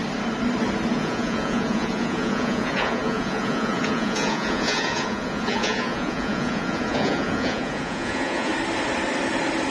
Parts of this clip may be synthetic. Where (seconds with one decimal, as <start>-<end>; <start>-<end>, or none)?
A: 0.9-8.5

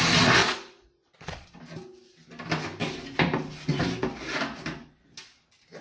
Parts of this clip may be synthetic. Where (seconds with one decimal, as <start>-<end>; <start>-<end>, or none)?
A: 0.4-1.6

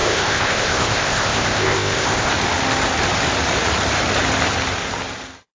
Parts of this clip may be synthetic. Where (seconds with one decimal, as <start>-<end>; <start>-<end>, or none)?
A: 0.0-2.3

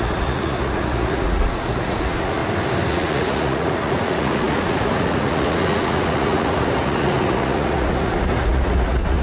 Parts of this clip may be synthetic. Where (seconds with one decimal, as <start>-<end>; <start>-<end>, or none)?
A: 0.0-2.4; 2.9-9.2

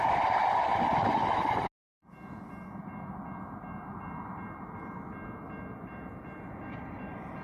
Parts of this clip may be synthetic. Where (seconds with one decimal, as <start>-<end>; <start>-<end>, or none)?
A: none

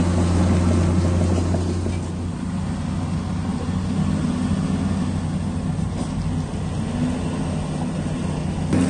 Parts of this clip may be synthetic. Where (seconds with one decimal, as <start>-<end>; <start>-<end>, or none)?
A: none

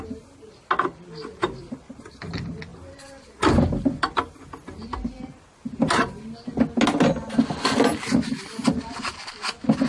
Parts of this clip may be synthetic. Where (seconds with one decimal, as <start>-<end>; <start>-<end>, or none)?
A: 2.7-4.4

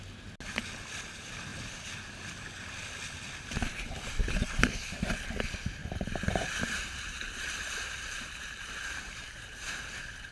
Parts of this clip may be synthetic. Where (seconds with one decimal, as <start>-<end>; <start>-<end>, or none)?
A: 5.8-10.3